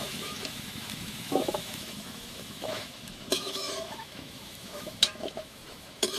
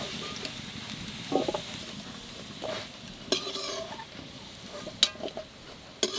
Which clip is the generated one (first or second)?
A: first